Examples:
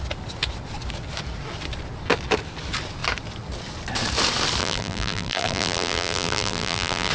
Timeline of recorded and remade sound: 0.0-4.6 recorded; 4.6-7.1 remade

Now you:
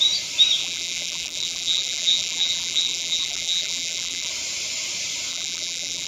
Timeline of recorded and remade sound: 0.0-0.6 recorded; 0.6-4.3 remade; 4.3-5.3 recorded; 5.3-6.1 remade